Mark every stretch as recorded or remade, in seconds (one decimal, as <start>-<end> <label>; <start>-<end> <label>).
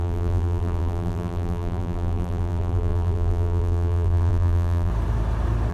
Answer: 0.0-4.9 remade; 4.9-5.7 recorded